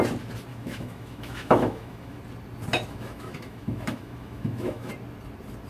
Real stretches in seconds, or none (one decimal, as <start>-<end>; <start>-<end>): 0.0-0.5; 2.2-2.7; 4.9-5.7